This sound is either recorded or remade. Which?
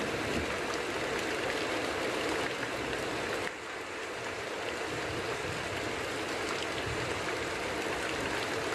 recorded